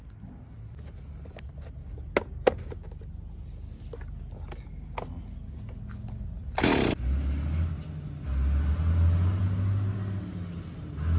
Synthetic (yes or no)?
no